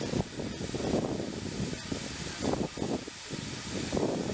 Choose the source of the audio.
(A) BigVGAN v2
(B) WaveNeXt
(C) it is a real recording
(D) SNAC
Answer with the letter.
C